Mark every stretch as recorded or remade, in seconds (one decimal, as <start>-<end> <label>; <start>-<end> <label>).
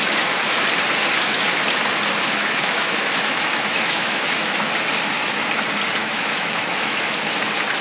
0.0-2.4 recorded; 2.4-4.7 remade; 4.7-6.0 recorded; 6.0-7.2 remade; 7.2-7.8 recorded